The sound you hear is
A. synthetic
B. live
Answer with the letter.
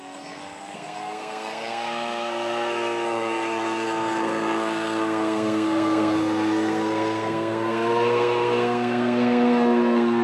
A